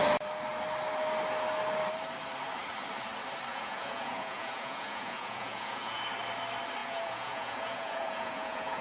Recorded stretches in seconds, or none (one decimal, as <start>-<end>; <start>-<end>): 0.0-3.5; 6.0-6.8